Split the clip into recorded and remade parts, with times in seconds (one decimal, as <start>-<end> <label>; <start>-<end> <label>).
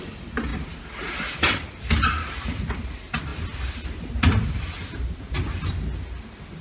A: 0.0-6.6 recorded